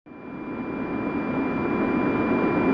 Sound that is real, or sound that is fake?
real